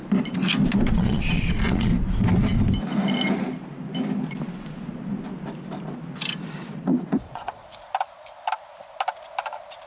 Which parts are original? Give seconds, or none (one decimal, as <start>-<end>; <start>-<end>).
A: 0.0-0.9; 1.9-6.8; 7.6-9.9